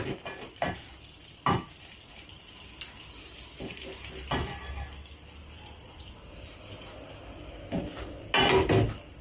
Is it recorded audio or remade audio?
recorded